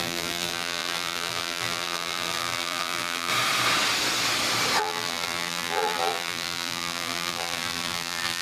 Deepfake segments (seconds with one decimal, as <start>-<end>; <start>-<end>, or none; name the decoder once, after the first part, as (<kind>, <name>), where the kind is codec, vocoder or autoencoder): 0.0-3.3 (vocoder, BigVGAN v2); 4.8-8.4